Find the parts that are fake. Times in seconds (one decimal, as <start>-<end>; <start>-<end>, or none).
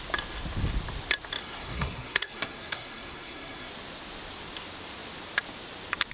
1.4-3.7